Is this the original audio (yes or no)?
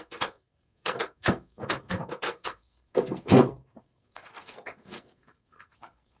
no